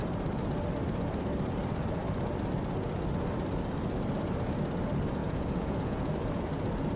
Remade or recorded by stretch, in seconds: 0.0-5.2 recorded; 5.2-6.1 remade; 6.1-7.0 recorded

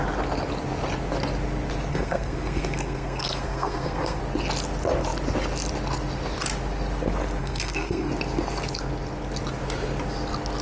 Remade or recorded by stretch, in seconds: 0.0-1.9 recorded; 1.9-4.2 remade; 4.2-7.4 recorded; 7.4-8.1 remade; 8.1-10.6 recorded

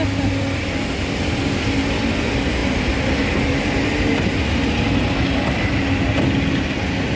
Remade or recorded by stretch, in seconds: 0.0-7.2 recorded

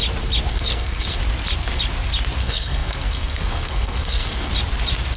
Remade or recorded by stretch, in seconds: 0.0-0.5 recorded; 0.5-1.2 remade; 1.2-2.4 recorded; 2.4-4.5 remade; 4.5-5.2 recorded

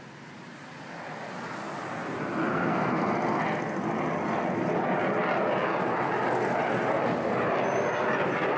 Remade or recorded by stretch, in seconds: 0.0-2.5 recorded; 2.5-3.0 remade; 3.0-8.6 recorded

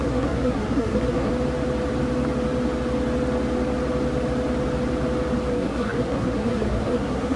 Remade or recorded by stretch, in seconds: 0.0-1.3 remade; 1.3-5.5 recorded; 5.5-7.4 remade

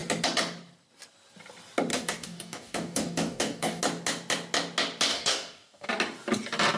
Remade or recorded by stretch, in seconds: 0.0-1.9 recorded; 1.9-3.8 remade; 3.8-5.1 recorded; 5.1-5.9 remade; 5.9-6.8 recorded